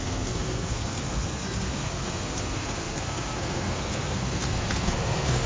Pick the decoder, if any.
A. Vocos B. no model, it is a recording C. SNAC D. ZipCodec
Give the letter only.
C